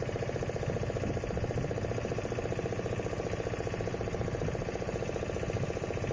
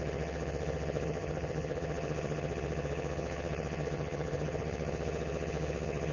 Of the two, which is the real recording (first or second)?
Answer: first